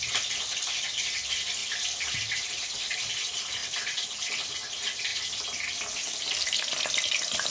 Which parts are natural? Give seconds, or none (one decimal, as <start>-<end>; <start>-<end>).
0.0-1.6; 3.2-3.6; 4.1-5.1; 6.2-7.5